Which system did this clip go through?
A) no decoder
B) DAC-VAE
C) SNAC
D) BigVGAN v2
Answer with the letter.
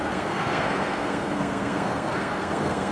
C